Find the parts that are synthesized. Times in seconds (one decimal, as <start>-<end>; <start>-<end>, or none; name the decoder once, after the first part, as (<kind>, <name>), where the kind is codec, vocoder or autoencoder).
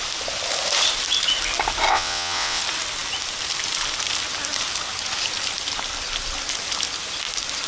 1.9-2.6 (vocoder, WaveNeXt)